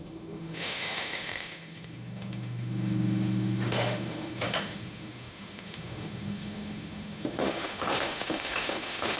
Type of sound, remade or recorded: remade